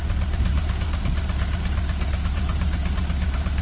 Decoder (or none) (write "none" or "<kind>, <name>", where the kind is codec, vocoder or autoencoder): vocoder, BigVGAN v2